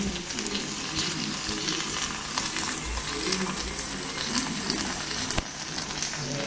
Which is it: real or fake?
real